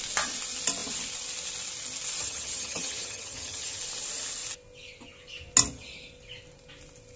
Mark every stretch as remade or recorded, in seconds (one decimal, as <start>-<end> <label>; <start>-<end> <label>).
0.0-2.2 recorded; 2.2-3.8 remade; 3.8-7.2 recorded